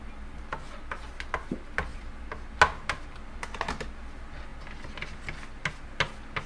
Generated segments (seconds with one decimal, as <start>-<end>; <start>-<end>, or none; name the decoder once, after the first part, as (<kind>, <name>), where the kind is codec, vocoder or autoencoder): none